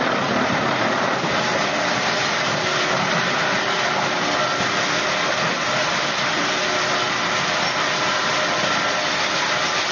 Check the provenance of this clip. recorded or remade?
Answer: recorded